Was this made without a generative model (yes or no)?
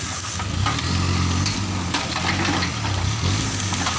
yes